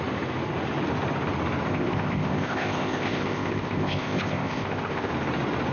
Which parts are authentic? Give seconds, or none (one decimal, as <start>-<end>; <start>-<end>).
0.0-1.7; 5.1-5.7

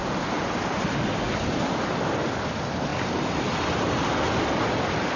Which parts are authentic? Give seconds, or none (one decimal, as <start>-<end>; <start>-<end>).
0.0-5.2

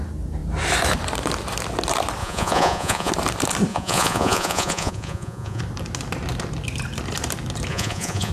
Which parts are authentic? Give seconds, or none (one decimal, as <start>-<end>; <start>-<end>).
0.0-2.2; 3.1-3.7; 5.6-7.7

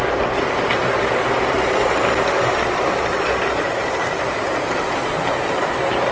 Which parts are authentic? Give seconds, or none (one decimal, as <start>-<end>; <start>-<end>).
0.0-6.1

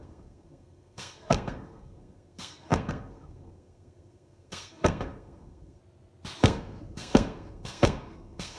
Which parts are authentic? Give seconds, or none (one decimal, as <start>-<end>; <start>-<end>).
5.8-6.4

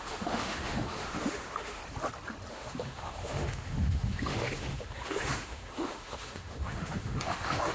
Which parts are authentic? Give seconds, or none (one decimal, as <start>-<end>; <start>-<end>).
1.8-2.5

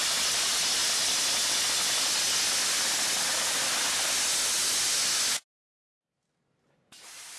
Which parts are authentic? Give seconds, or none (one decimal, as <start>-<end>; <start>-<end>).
0.0-7.4